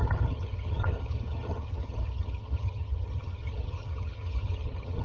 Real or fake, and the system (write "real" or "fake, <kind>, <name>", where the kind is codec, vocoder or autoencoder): fake, vocoder, HiFi-GAN